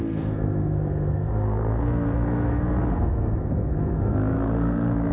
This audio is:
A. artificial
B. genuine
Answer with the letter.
A